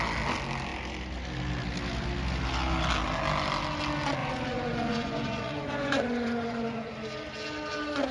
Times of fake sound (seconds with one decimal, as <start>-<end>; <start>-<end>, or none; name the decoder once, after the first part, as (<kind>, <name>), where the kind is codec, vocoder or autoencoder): 4.2-6.9 (vocoder, Vocos)